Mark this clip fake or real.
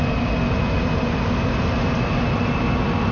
real